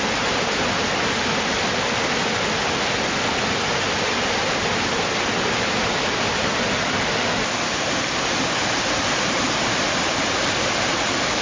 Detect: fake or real real